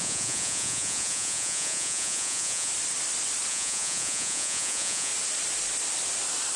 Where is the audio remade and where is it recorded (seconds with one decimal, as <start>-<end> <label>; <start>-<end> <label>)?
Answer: 0.0-2.7 remade; 2.7-3.5 recorded; 3.5-5.1 remade; 5.1-6.6 recorded